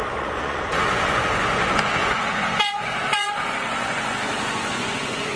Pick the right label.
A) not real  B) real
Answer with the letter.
A